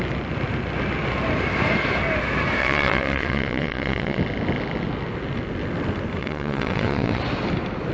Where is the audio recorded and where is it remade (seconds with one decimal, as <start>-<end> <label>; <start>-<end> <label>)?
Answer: 0.0-2.6 recorded; 2.6-4.2 remade; 4.2-6.2 recorded; 6.2-7.2 remade; 7.2-7.9 recorded